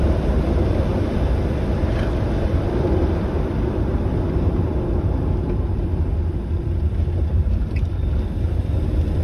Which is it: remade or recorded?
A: remade